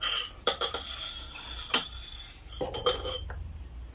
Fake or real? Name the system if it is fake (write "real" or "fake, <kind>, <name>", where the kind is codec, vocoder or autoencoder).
fake, vocoder, BigVGAN v2